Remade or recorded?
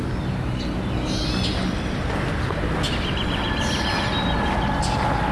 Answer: recorded